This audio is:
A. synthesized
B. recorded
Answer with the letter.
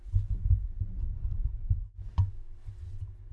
B